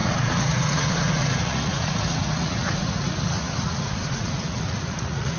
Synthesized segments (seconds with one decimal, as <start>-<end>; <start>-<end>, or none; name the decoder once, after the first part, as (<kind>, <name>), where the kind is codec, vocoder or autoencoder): 0.0-5.4 (vocoder, Vocos)